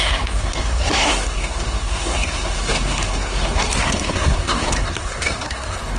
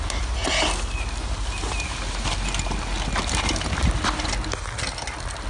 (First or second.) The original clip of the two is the second